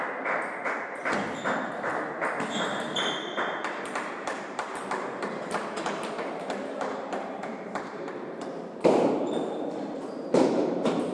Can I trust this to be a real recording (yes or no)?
no